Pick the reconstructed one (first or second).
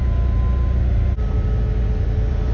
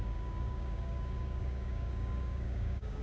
second